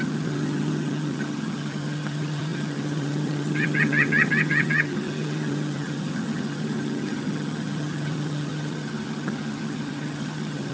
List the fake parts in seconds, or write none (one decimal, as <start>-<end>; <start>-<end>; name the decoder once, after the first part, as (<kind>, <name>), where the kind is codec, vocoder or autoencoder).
0.0-10.7 (vocoder, HiFi-GAN)